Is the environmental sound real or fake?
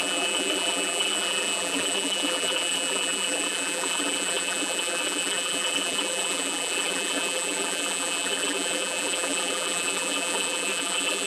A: fake